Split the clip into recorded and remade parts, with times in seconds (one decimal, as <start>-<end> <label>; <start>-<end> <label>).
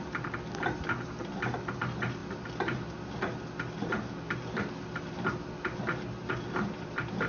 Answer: 0.0-7.3 recorded